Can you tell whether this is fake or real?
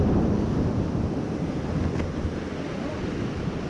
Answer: real